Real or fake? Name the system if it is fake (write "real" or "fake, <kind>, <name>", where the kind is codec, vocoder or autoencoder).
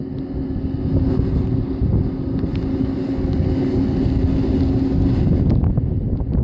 real